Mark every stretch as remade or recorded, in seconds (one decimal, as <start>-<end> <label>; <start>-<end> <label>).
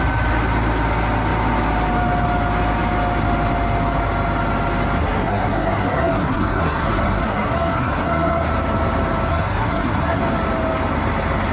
0.0-5.0 recorded; 5.0-8.5 remade; 8.5-9.3 recorded; 9.3-10.2 remade; 10.2-11.5 recorded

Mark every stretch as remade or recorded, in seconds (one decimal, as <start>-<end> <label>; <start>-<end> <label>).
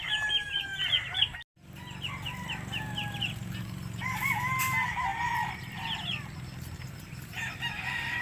0.0-0.7 remade; 0.7-4.6 recorded; 4.6-5.1 remade; 5.1-6.7 recorded; 6.7-8.2 remade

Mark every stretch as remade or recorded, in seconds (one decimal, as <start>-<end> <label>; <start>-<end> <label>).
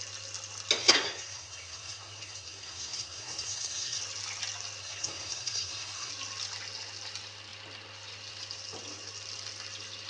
0.0-0.8 recorded; 0.8-4.0 remade; 4.0-4.8 recorded; 4.8-6.1 remade; 6.1-10.1 recorded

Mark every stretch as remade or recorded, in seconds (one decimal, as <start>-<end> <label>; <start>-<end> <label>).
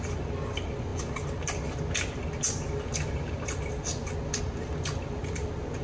0.0-5.8 recorded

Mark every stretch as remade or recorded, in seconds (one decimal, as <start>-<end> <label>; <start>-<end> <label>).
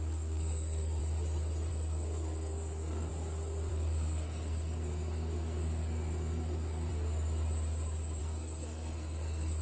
0.0-1.0 remade; 1.0-1.7 recorded; 1.7-3.1 remade; 3.1-3.7 recorded; 3.7-6.9 remade; 6.9-8.2 recorded; 8.2-9.6 remade